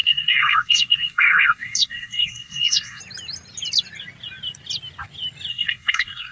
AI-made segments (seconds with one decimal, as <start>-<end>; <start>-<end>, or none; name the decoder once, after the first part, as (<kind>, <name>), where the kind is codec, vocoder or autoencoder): 0.0-3.0 (codec, SNAC); 5.5-6.3